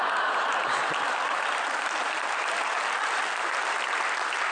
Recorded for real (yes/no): yes